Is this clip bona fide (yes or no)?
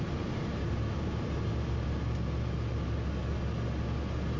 yes